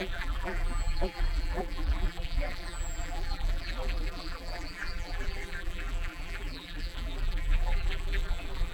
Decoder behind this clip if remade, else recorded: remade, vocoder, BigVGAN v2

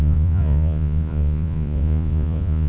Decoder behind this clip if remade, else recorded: remade, vocoder, Vocos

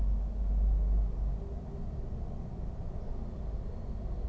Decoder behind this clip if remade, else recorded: recorded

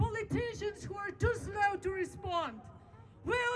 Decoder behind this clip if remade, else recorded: recorded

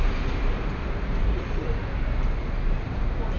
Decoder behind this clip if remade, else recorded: recorded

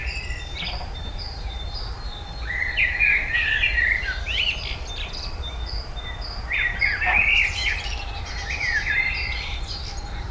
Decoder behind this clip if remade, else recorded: remade, vocoder, BigVGAN v2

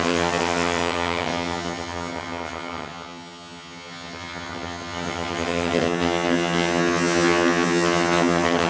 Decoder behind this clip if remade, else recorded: remade, vocoder, HiFi-GAN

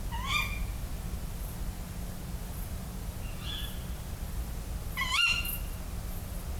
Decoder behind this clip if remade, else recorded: recorded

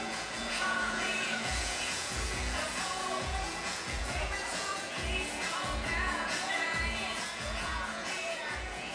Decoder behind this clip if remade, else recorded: remade, vocoder, Vocos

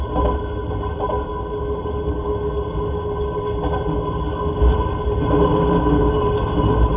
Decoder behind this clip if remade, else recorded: recorded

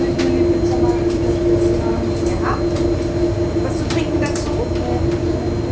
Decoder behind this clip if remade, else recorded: recorded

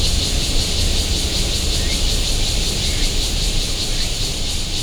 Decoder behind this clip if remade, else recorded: recorded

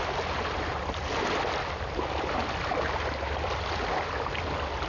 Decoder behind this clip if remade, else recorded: recorded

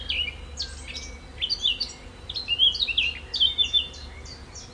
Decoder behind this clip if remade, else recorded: recorded